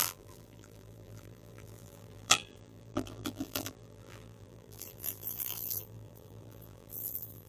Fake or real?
fake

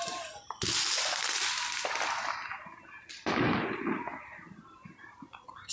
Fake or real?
real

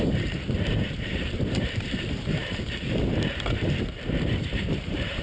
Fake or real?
fake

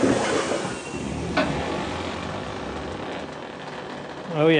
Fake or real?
real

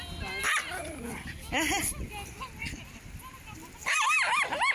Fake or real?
real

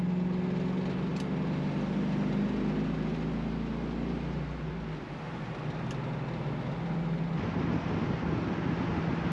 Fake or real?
real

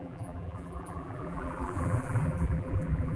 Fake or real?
fake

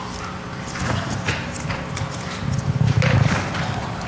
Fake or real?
fake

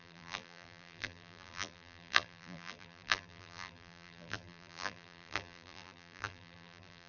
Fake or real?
fake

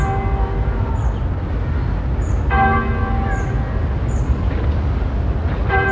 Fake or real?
real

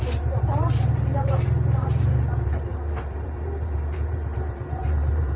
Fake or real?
fake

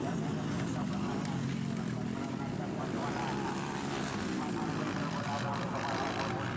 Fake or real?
real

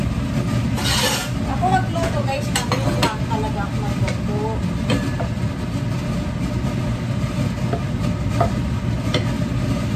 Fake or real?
real